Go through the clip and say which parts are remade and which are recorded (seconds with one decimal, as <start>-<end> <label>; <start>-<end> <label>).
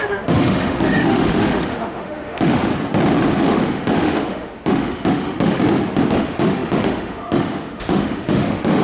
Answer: 0.0-2.7 remade; 2.7-3.4 recorded; 3.4-5.6 remade; 5.6-6.1 recorded; 6.1-8.8 remade